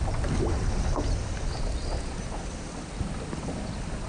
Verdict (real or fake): real